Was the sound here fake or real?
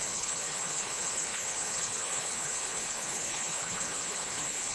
fake